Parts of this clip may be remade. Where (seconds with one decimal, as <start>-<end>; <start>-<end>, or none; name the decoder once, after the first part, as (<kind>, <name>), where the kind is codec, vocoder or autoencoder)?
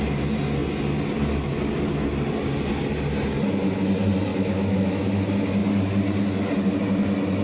4.3-5.0 (autoencoder, DAC-VAE)